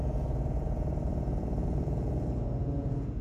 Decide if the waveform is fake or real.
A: fake